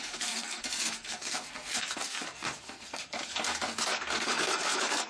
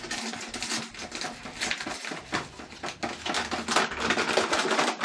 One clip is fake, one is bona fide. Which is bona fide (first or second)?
second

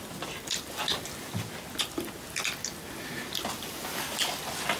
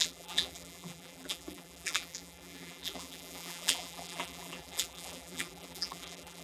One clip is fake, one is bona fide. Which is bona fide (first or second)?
first